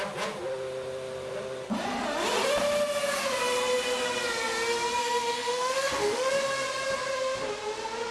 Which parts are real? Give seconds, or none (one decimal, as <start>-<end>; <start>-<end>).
0.0-5.0; 6.3-8.1